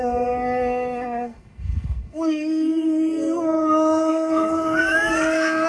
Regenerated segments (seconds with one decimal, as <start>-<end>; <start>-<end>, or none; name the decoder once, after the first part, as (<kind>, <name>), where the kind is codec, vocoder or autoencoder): 0.0-5.7 (codec, SNAC)